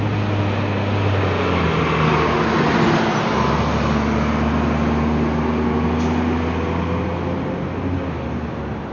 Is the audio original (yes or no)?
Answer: yes